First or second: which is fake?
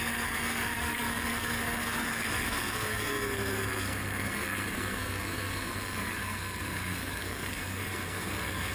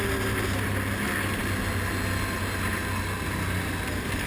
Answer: first